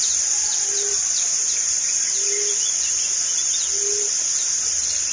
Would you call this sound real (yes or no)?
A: yes